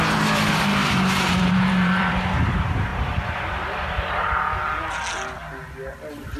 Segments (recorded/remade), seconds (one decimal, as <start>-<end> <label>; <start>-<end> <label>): 0.0-0.8 recorded; 0.8-2.1 remade; 2.1-2.9 recorded; 2.9-4.4 remade; 4.4-6.4 recorded